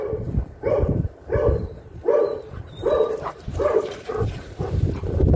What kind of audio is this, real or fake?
fake